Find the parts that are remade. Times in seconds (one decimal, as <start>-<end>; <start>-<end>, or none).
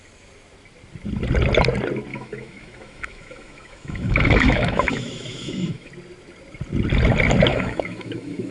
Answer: 2.1-5.9; 7.5-8.5